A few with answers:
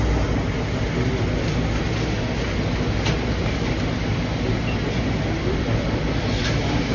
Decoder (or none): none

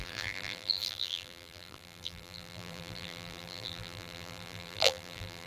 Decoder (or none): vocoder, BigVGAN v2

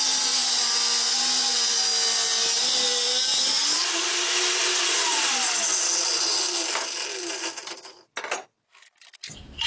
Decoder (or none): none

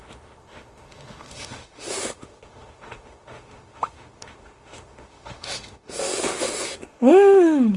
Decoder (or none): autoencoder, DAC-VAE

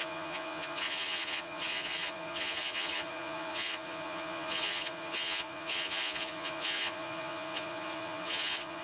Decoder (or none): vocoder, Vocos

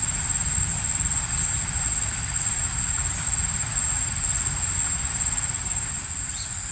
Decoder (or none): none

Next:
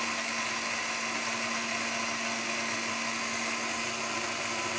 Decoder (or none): none